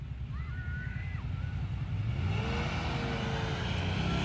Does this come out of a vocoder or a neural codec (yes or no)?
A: no